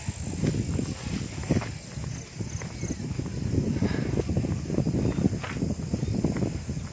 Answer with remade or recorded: recorded